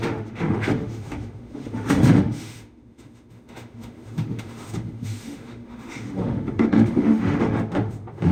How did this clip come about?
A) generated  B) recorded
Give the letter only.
A